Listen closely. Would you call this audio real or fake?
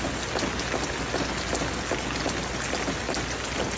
real